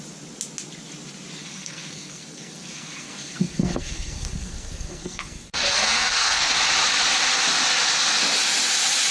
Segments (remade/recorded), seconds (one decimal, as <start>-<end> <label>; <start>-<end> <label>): 0.0-1.4 recorded; 1.4-6.5 remade; 6.5-9.1 recorded